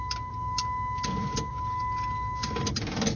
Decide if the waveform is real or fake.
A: real